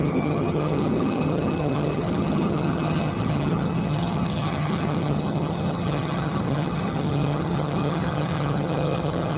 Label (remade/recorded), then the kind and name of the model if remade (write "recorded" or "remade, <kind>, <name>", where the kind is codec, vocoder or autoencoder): remade, vocoder, HiFi-GAN